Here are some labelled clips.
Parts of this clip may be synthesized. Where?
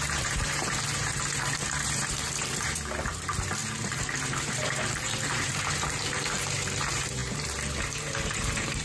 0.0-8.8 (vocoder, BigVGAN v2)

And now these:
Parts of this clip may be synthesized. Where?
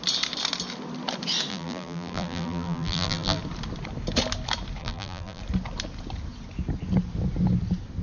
1.5-3.4 (vocoder, BigVGAN v2); 4.8-5.4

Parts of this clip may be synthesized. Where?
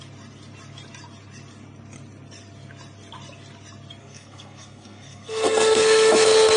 4.0-6.6 (codec, SNAC)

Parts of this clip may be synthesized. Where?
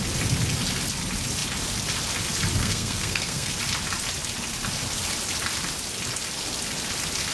2.6-3.5 (codec, SNAC)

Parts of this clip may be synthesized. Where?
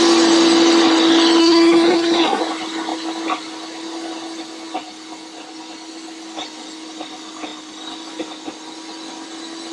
1.4-2.4 (codec, SNAC)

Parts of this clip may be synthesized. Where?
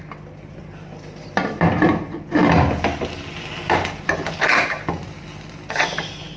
none